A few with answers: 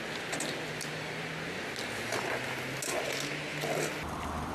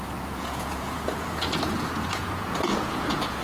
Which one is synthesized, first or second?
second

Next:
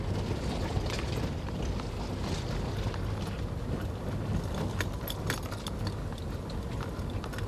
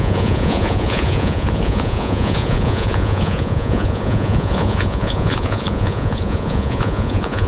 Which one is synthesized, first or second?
second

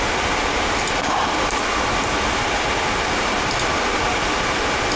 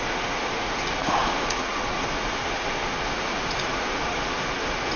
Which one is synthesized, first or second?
second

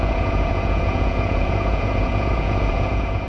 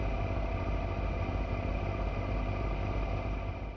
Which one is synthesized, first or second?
first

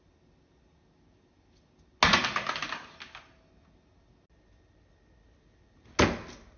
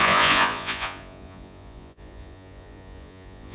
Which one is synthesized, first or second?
second